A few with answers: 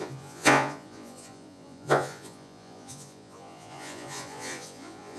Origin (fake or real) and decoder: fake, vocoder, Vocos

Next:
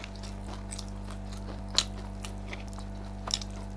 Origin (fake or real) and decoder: real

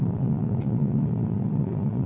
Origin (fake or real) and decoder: fake, vocoder, Vocos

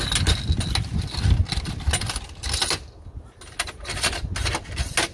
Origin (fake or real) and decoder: real